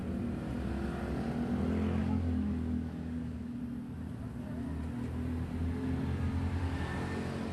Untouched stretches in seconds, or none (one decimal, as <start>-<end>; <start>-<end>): 0.0-2.0; 3.6-7.5